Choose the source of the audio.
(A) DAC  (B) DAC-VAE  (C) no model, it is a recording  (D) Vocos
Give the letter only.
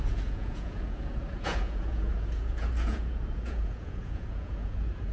D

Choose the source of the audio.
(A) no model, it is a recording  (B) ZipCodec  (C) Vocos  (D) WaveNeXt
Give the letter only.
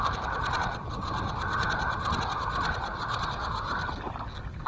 A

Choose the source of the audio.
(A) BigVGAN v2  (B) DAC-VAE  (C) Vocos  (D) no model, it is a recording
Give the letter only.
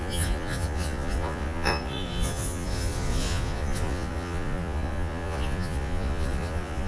C